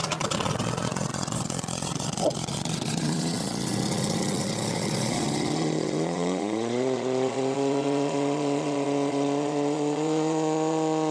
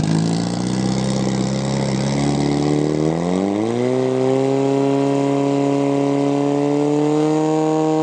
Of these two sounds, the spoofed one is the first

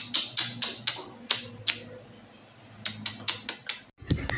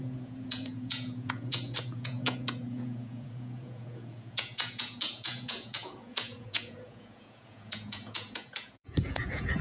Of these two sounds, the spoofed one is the second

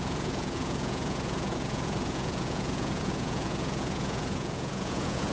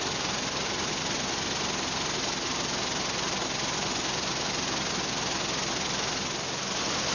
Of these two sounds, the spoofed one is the first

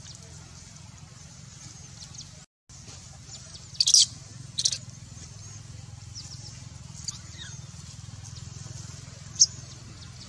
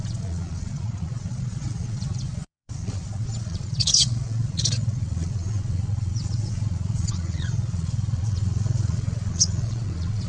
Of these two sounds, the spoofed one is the second